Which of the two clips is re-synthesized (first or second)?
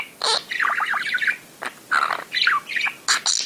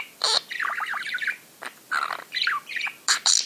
second